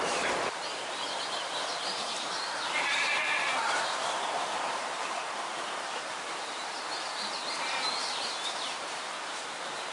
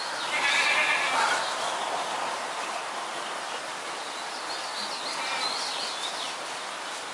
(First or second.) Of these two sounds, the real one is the second